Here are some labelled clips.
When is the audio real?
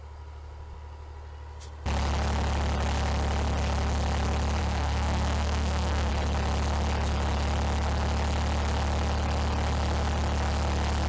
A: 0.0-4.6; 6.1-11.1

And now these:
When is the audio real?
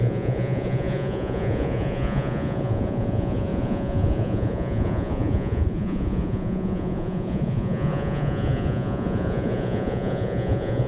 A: none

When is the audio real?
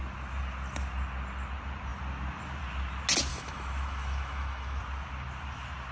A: 0.0-3.3; 4.8-5.9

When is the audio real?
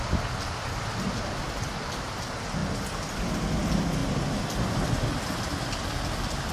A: 0.0-6.5